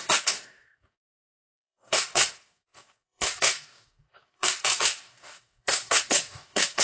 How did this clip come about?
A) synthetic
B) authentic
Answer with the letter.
A